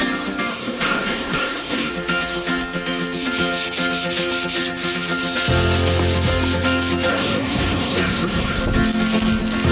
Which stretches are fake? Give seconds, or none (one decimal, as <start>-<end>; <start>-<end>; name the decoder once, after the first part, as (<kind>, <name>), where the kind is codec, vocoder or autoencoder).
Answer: 0.5-1.9 (codec, SNAC); 7.1-8.6

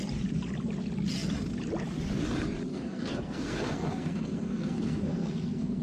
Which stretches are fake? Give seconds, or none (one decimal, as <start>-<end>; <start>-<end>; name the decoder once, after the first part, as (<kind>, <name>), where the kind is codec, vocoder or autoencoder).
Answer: 2.7-5.8 (codec, SNAC)